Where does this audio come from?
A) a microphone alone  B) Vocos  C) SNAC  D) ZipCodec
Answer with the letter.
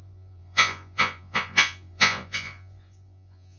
B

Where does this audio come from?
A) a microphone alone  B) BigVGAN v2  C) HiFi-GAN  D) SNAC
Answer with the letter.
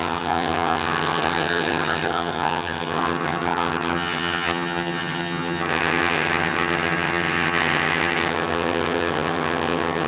C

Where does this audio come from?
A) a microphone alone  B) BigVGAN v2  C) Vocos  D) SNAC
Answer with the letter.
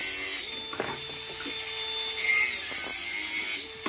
A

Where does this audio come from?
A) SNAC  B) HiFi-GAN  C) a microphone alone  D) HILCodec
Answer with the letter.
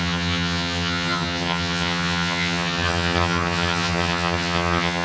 B